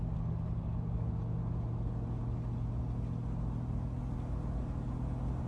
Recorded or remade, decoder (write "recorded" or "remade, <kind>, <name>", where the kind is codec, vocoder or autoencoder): recorded